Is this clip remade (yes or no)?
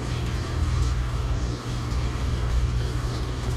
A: yes